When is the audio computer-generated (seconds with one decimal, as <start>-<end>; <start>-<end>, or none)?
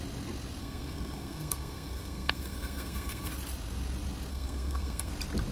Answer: 0.6-3.3; 4.3-5.1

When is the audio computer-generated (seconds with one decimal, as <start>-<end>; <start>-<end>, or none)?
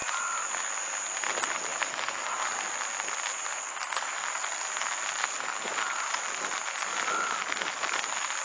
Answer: none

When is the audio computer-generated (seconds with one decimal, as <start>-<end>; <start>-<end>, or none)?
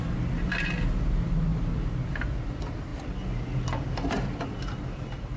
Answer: none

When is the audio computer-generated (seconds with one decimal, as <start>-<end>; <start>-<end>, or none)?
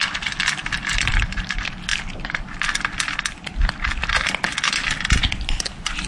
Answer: 0.6-1.1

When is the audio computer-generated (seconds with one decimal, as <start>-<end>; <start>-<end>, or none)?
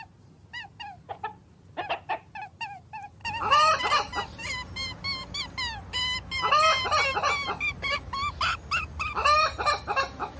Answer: none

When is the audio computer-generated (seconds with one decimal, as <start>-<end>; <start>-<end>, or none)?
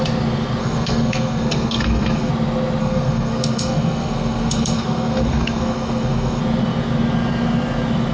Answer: 0.6-2.3; 2.8-6.4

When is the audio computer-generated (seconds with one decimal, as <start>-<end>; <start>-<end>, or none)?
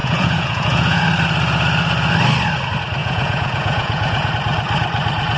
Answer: 0.0-1.0; 3.0-4.3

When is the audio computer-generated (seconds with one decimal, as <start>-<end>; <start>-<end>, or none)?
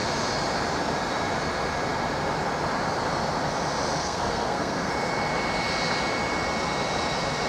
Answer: 4.0-4.9